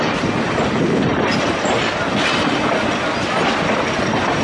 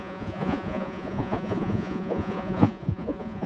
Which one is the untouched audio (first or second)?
first